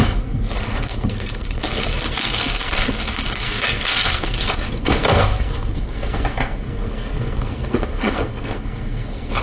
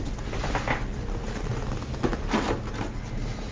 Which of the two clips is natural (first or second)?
second